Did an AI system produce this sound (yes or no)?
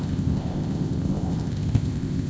yes